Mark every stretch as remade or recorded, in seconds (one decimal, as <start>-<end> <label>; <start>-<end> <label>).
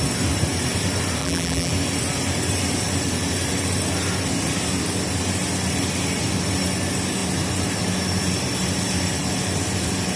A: 0.0-1.2 recorded; 1.2-1.7 remade; 1.7-10.2 recorded